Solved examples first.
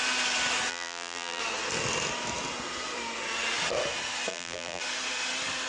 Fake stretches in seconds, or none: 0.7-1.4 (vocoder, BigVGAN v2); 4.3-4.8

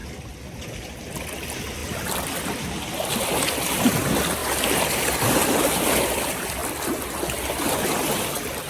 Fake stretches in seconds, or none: 1.8-3.8 (vocoder, BigVGAN v2)

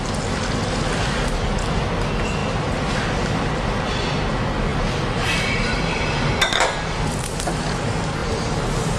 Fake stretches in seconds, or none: 2.4-3.8 (vocoder, BigVGAN v2); 4.7-7.2; 8.2-9.0

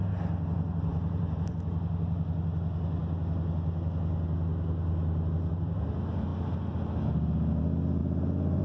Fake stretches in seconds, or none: 0.9-1.5 (vocoder, BigVGAN v2); 8.0-8.6

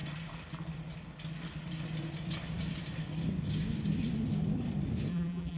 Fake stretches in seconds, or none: 5.1-5.6 (vocoder, BigVGAN v2)

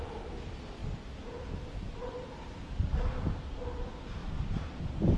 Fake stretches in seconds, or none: 0.0-5.2 (vocoder, BigVGAN v2)

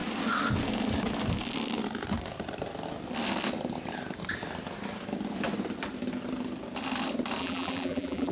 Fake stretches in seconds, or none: 7.4-8.3 (vocoder, BigVGAN v2)

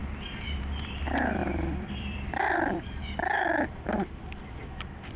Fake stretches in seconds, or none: 1.4-4.5 (vocoder, BigVGAN v2)